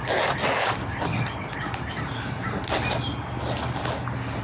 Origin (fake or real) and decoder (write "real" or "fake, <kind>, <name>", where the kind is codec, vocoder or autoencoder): real